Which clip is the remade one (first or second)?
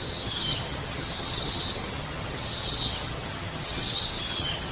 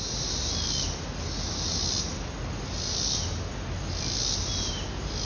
first